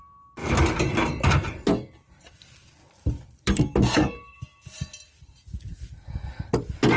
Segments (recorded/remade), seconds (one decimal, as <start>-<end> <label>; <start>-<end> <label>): 0.0-0.4 recorded; 0.4-3.6 remade; 3.6-7.0 recorded